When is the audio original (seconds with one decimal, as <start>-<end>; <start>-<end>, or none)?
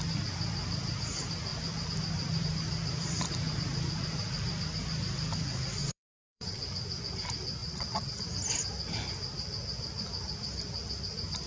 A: 0.0-5.8; 6.6-7.6; 8.1-11.5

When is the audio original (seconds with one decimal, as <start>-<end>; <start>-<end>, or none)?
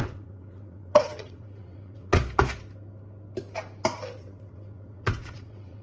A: 2.2-4.0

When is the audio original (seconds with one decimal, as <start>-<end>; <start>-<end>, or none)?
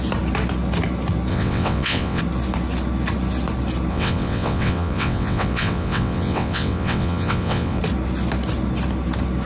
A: 0.0-1.3; 2.2-3.9; 7.8-9.5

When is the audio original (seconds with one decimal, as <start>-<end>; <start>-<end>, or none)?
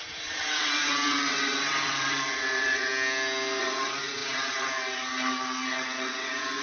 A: 2.9-3.6